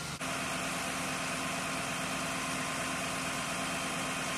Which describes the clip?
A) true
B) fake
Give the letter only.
A